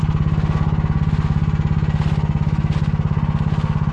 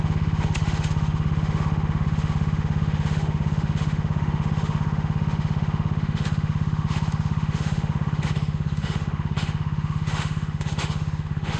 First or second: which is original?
first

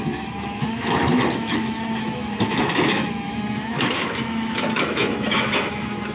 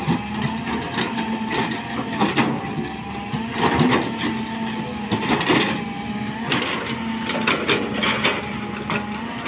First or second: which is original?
second